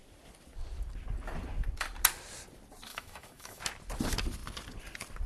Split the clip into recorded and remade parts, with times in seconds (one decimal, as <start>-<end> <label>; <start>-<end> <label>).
0.0-2.9 recorded; 2.9-3.6 remade; 3.6-5.3 recorded